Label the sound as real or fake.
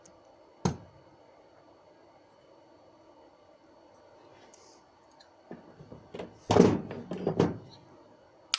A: real